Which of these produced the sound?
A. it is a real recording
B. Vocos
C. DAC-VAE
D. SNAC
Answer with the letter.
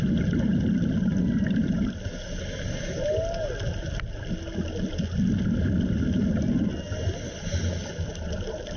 A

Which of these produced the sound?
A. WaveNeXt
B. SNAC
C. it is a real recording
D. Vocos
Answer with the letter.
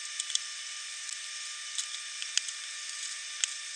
C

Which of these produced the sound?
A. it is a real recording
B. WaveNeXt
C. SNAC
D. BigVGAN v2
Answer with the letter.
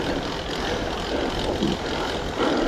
A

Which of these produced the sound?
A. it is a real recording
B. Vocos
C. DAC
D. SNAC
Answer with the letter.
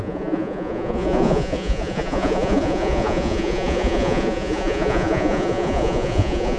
B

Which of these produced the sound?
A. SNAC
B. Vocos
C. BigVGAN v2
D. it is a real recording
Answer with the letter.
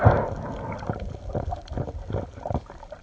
D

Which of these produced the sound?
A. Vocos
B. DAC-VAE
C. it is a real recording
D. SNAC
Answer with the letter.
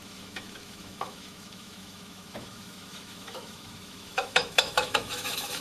B